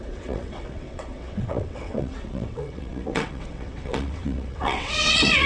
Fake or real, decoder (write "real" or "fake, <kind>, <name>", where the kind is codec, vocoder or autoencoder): fake, vocoder, WaveNeXt